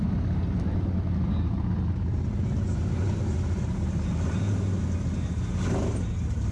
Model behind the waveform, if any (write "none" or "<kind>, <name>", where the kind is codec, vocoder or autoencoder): none